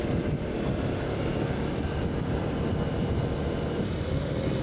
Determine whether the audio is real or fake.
real